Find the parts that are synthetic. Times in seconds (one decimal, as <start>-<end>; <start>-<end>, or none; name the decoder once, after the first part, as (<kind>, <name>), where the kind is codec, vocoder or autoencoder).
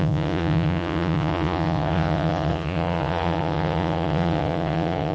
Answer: 0.0-5.1 (vocoder, Vocos)